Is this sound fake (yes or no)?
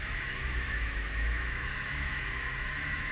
yes